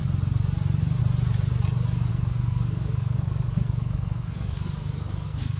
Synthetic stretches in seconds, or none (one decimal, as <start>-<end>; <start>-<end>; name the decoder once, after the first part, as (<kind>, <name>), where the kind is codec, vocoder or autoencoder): 2.1-5.6 (codec, SNAC)